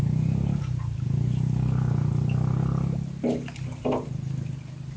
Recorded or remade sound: recorded